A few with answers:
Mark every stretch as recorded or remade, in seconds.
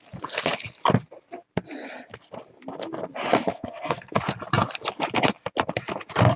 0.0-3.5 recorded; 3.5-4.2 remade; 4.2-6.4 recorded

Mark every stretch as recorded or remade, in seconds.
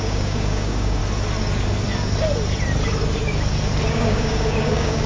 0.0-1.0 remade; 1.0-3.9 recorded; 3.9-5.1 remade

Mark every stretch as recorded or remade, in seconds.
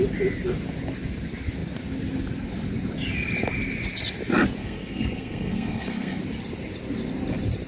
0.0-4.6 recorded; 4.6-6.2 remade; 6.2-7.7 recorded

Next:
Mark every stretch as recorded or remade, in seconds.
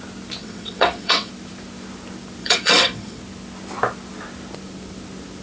0.0-0.4 recorded; 0.4-1.3 remade; 1.3-2.4 recorded; 2.4-3.2 remade; 3.2-5.4 recorded